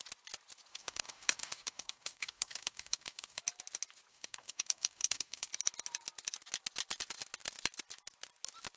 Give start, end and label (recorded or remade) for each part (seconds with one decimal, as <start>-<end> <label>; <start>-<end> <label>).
0.0-0.7 recorded; 0.7-3.4 remade; 3.4-4.1 recorded; 4.1-5.5 remade; 5.5-8.8 recorded